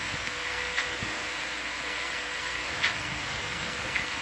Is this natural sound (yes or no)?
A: no